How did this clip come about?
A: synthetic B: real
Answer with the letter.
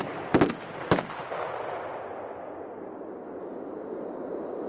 B